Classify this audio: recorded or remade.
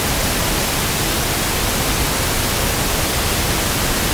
recorded